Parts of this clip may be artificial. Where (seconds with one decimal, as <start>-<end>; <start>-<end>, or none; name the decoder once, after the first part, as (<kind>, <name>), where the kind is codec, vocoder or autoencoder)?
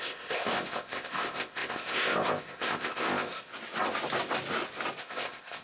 0.0-3.5 (codec, ZipCodec); 5.0-5.6